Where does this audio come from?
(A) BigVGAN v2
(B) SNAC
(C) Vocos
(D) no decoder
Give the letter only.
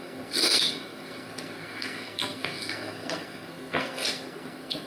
B